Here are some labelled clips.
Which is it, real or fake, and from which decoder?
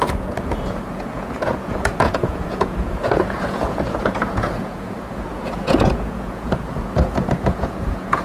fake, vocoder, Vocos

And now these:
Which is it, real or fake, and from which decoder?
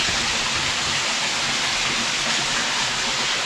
real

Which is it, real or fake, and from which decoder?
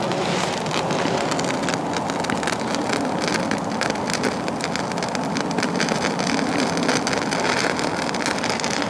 real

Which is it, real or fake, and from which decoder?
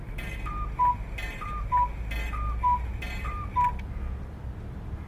real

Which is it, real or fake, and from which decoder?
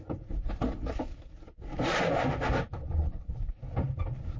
real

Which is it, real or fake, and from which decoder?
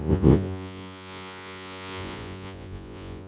fake, vocoder, Vocos